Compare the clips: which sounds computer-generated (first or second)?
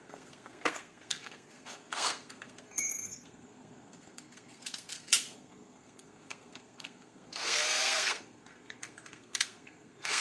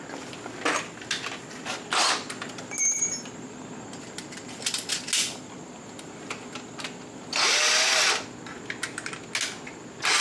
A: first